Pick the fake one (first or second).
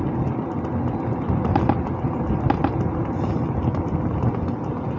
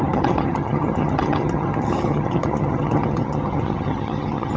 second